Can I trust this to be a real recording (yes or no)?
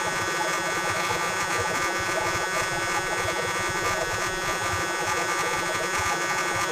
no